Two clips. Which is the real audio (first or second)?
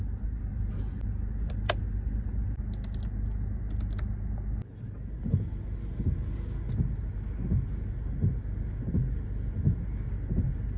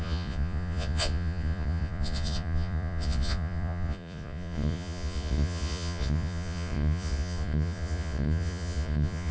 first